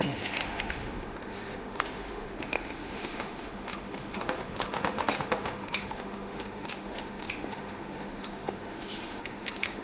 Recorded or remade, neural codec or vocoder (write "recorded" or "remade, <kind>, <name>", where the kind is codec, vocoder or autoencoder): remade, autoencoder, DAC-VAE